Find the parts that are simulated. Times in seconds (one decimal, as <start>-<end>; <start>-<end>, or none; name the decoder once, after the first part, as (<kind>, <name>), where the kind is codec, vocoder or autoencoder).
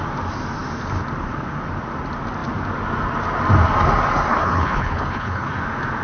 4.3-5.5 (codec, HILCodec)